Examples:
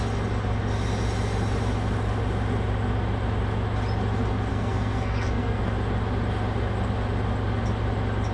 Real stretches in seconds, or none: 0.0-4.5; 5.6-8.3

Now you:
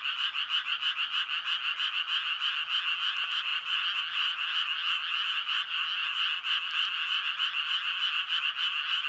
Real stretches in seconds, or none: 0.0-9.1

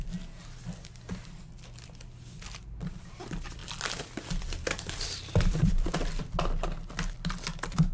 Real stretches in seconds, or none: 0.0-3.6; 6.2-7.9